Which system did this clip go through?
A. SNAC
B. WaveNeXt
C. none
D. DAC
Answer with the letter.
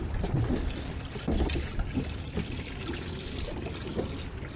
C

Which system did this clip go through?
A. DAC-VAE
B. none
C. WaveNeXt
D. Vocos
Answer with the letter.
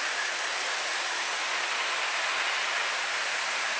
B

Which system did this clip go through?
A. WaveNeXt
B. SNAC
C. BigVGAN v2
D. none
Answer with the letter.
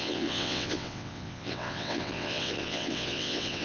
A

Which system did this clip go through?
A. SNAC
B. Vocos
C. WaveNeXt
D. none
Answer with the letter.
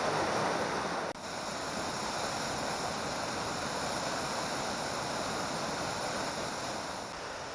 D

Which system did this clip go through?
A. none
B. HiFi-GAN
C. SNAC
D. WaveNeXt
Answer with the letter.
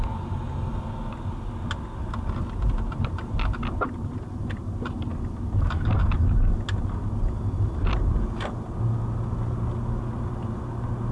A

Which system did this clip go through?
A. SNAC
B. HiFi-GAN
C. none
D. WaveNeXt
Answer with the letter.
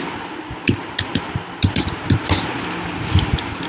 C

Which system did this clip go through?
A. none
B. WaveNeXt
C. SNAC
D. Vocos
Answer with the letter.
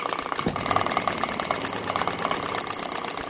A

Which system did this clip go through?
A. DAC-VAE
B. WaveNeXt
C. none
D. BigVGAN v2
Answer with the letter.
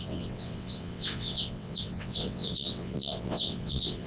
B